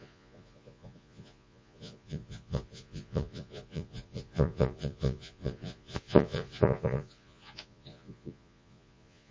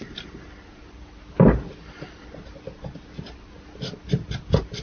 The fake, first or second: first